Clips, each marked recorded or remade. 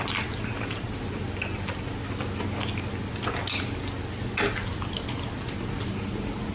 recorded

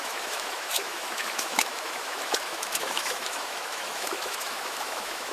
remade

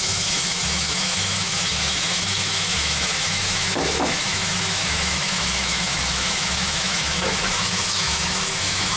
remade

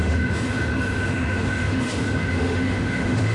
remade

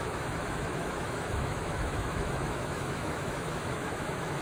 remade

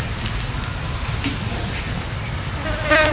recorded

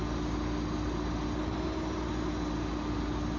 recorded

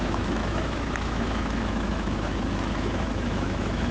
remade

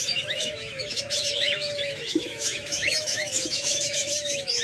remade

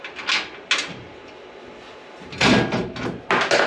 recorded